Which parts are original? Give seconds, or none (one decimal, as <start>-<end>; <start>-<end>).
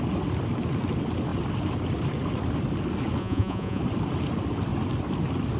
0.0-3.2; 3.8-5.6